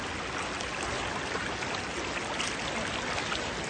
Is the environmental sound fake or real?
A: real